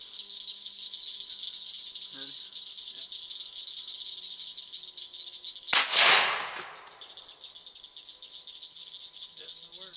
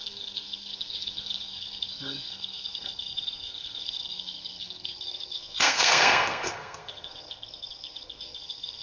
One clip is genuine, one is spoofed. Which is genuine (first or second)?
first